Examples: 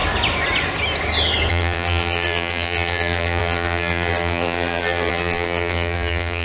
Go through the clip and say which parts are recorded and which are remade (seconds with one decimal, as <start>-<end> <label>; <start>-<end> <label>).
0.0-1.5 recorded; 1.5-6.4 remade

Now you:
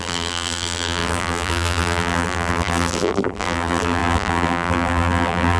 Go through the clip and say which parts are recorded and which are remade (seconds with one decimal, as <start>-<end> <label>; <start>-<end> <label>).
0.0-5.6 remade

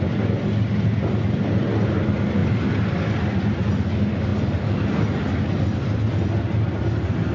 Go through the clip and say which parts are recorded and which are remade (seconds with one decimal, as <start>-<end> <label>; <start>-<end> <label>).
0.0-7.3 recorded

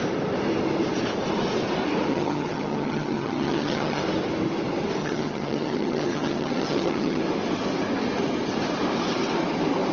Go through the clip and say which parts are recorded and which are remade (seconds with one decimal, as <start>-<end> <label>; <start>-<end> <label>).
0.0-2.1 recorded; 2.1-4.0 remade; 4.0-5.0 recorded; 5.0-7.2 remade; 7.2-9.9 recorded